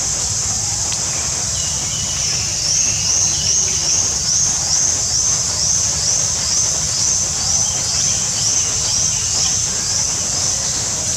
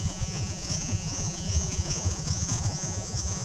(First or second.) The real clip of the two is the first